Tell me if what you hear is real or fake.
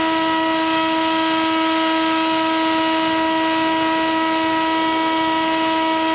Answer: real